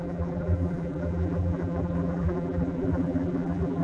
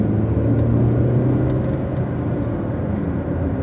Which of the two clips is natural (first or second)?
second